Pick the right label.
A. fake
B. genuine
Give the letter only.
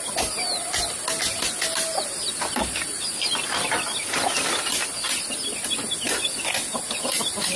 B